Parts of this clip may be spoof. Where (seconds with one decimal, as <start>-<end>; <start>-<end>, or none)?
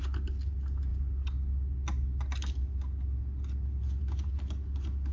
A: none